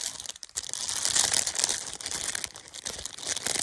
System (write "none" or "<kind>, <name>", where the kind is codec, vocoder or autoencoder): none